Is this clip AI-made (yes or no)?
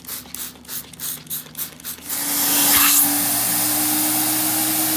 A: no